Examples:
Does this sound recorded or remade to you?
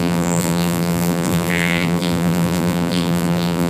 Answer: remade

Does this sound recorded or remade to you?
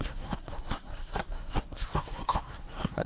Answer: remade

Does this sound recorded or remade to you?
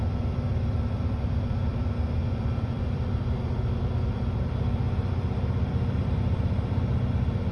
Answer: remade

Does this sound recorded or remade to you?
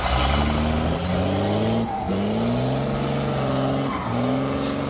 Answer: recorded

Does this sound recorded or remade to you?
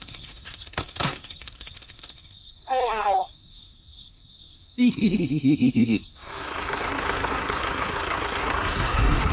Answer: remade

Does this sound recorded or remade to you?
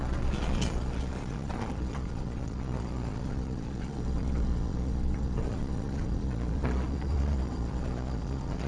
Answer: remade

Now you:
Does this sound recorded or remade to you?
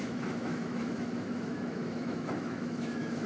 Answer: remade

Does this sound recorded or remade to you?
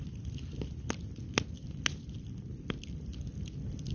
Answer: recorded